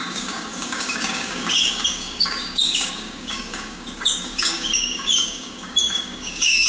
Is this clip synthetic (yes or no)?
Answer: yes